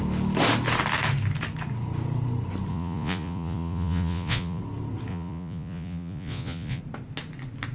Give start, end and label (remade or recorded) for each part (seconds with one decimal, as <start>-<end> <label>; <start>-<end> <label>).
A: 0.0-2.7 recorded; 2.7-4.6 remade; 4.6-5.1 recorded; 5.1-6.8 remade; 6.8-7.7 recorded